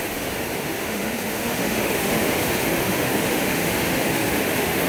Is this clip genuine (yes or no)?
no